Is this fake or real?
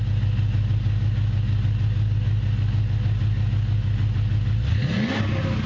real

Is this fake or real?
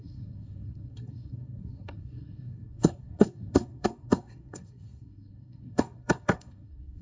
fake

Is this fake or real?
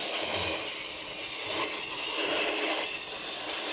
real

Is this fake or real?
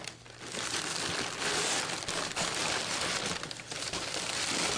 real